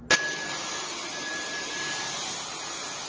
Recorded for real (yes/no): yes